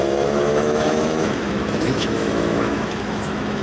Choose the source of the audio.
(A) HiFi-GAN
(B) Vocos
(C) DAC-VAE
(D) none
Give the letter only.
C